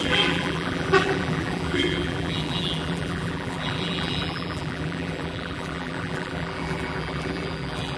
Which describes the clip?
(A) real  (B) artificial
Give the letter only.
B